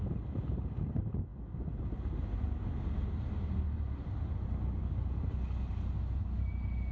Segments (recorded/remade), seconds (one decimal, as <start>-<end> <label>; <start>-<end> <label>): 0.0-6.9 recorded